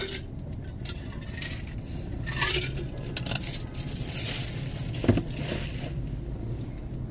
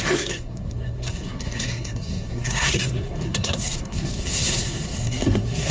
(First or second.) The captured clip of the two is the first